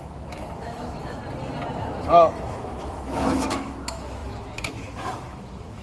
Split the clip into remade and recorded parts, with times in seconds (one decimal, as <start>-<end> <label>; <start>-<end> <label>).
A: 0.0-1.2 remade; 1.2-1.8 recorded; 1.8-5.8 remade